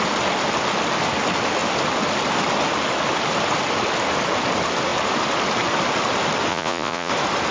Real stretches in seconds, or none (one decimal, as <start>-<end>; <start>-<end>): 0.0-6.5; 7.1-7.5

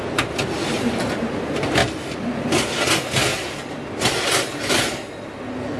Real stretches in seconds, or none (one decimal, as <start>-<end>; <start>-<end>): 0.0-5.8

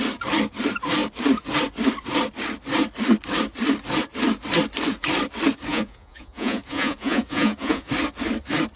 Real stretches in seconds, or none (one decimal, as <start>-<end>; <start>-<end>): 0.0-5.7; 7.9-8.8

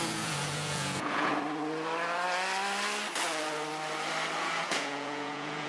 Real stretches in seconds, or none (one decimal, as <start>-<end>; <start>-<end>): 1.3-4.4

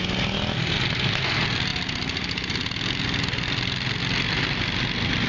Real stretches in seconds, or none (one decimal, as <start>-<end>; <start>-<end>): 0.0-5.3

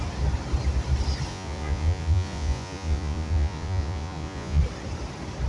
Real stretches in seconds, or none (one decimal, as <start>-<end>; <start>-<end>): 0.0-1.3; 4.6-5.5

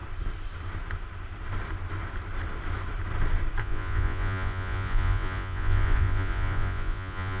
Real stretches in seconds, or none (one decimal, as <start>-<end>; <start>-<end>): 0.0-3.6

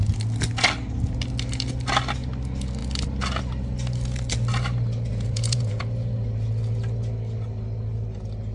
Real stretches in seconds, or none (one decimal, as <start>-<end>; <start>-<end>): 0.0-5.1; 5.8-8.5